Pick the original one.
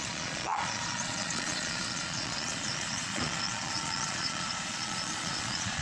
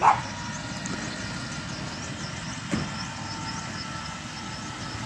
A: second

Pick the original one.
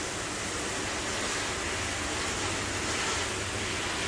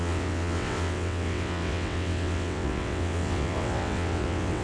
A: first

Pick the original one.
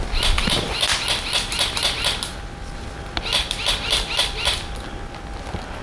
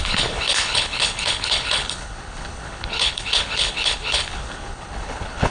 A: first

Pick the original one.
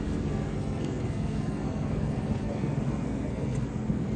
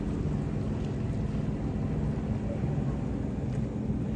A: second